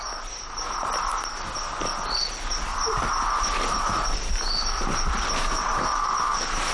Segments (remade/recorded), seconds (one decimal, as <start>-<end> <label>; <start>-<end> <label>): 0.0-2.7 recorded; 2.7-4.3 remade; 4.3-5.7 recorded; 5.7-6.3 remade; 6.3-6.7 recorded